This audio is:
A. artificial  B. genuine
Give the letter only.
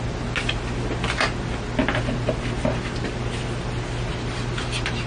B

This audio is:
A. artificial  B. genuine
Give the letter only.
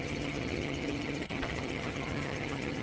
A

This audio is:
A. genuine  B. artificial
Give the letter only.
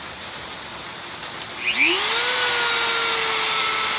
A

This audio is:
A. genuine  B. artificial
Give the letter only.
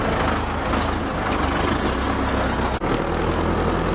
A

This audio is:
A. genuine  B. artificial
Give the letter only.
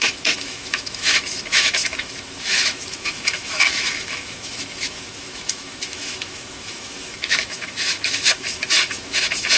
B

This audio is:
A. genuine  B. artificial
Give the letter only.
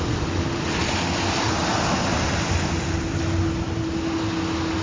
A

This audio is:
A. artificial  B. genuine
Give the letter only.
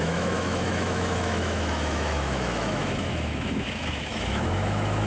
A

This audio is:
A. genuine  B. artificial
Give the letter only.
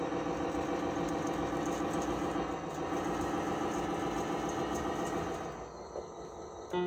A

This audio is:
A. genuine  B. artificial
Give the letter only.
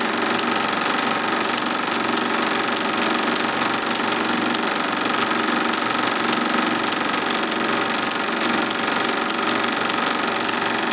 A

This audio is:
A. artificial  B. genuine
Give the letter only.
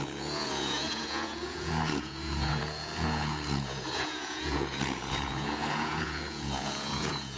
A